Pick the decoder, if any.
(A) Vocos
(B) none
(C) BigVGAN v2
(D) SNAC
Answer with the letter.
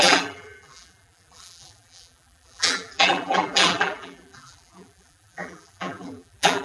C